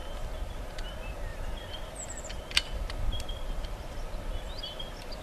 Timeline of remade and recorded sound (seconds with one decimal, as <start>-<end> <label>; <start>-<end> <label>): 0.0-1.3 recorded; 1.3-2.4 remade; 2.4-5.2 recorded